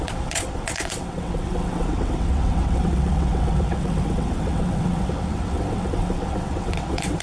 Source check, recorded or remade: remade